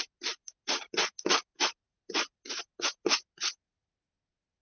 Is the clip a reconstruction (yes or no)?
no